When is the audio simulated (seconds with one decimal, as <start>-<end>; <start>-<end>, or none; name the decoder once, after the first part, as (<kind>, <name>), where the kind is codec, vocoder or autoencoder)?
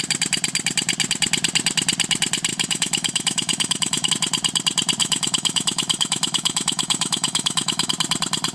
2.5-4.1 (autoencoder, DAC-VAE); 5.0-7.9